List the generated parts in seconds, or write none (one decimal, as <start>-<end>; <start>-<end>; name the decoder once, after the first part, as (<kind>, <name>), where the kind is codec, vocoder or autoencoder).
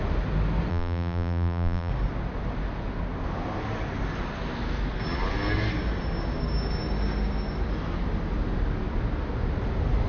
0.7-1.9 (vocoder, BigVGAN v2)